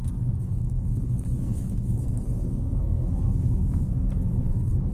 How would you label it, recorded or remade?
remade